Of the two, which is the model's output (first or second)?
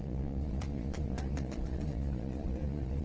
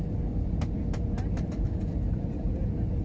first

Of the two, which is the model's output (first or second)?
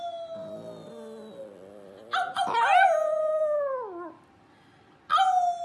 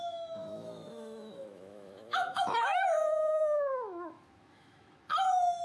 second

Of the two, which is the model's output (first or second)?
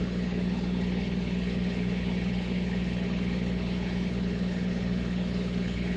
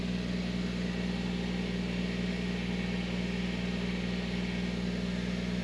first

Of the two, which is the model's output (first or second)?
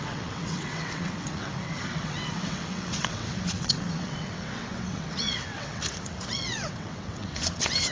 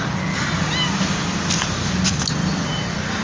first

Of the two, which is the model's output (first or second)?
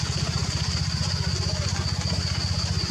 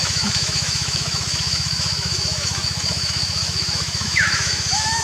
second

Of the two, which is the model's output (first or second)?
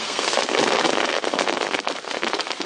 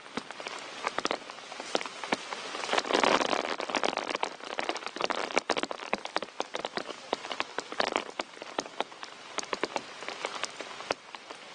first